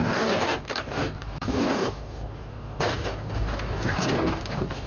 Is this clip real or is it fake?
fake